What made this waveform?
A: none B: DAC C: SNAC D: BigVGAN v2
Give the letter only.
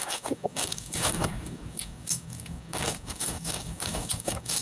B